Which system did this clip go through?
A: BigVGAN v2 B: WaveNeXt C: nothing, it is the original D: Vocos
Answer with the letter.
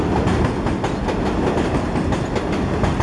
C